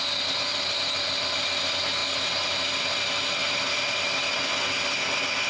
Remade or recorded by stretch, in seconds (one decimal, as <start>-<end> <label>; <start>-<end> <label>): 0.0-0.5 recorded; 0.5-1.6 remade; 1.6-2.0 recorded; 2.0-2.8 remade; 2.8-3.4 recorded; 3.4-3.9 remade; 3.9-5.5 recorded